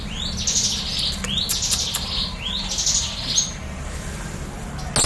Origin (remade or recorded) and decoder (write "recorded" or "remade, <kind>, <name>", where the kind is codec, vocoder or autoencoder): recorded